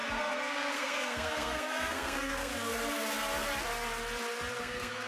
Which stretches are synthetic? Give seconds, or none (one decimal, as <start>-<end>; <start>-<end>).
0.0-2.5; 4.6-5.1